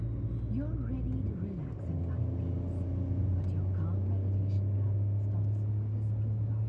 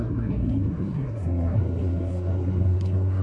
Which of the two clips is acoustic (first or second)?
first